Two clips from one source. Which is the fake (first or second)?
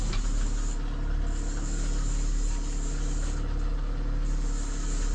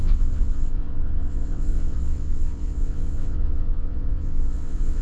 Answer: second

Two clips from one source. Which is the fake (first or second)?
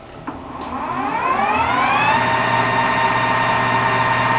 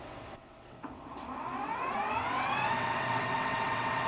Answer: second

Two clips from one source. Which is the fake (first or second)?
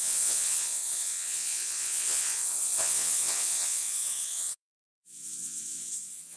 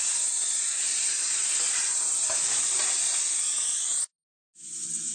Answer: first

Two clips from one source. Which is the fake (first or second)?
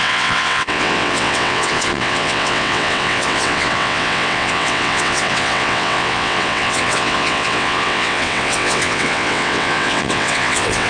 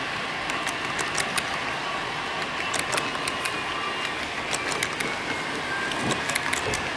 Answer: first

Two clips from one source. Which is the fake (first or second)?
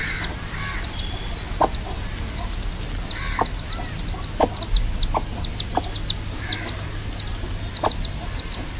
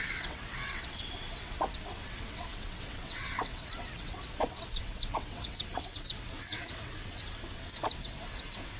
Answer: second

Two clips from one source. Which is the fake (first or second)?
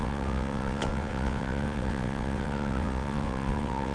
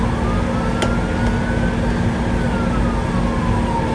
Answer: first